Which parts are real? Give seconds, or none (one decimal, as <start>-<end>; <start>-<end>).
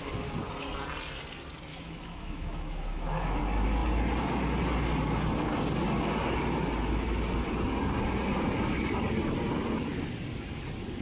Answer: 0.0-1.7; 3.4-11.0